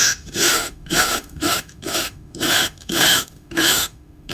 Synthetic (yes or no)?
yes